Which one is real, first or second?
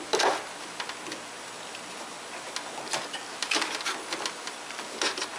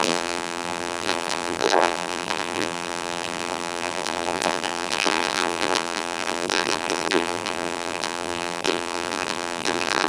first